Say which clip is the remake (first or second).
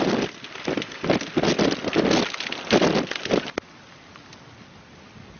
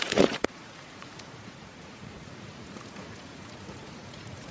second